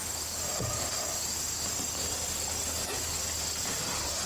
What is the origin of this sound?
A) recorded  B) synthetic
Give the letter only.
A